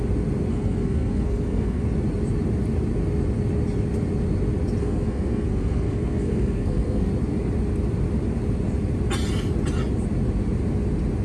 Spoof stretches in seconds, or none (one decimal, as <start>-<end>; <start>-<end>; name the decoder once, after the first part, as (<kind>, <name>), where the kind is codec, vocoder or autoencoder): 0.5-1.8 (codec, SNAC); 4.8-7.1